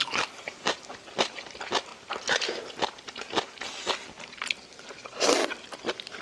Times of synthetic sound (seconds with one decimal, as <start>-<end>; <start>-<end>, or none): none